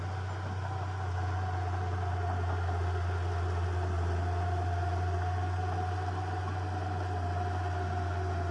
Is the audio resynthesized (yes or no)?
no